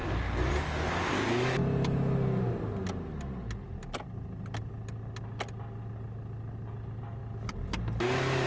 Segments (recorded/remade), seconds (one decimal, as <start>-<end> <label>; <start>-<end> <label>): 0.0-8.5 recorded